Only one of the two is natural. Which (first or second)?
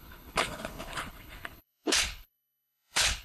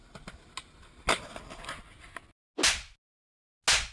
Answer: second